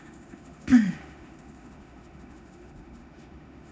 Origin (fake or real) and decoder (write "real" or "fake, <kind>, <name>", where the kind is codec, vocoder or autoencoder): fake, autoencoder, DAC-VAE